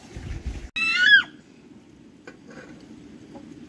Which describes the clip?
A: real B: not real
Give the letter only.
A